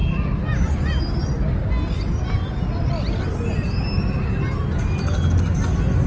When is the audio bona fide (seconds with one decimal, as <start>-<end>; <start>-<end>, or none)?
0.0-6.1